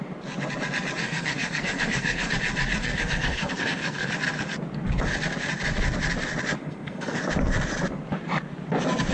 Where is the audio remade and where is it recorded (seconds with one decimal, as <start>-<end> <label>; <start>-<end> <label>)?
0.0-1.0 recorded; 1.0-2.3 remade; 2.3-2.8 recorded; 2.8-4.1 remade; 4.1-6.6 recorded; 6.6-7.2 remade; 7.2-9.1 recorded

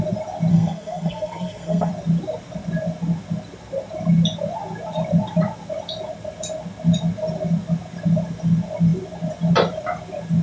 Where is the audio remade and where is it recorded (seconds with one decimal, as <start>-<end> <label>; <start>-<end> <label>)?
0.0-0.5 recorded; 0.5-1.9 remade; 1.9-10.4 recorded